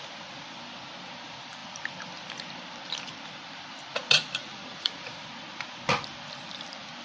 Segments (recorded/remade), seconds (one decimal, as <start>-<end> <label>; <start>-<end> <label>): 0.0-3.9 recorded; 3.9-5.2 remade; 5.2-7.0 recorded

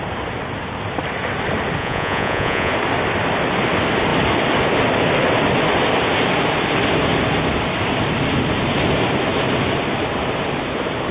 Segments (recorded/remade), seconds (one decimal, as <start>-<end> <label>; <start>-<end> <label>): 0.0-1.8 recorded; 1.8-2.7 remade; 2.7-11.1 recorded

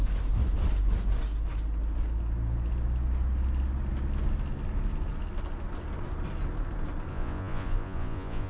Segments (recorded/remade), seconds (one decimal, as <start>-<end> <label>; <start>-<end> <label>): 0.0-7.1 recorded; 7.1-8.5 remade